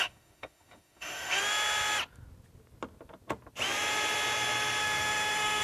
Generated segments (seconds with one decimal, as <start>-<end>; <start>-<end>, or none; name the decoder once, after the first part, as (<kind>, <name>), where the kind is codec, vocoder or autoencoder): 0.0-1.4 (autoencoder, DAC-VAE); 4.8-5.6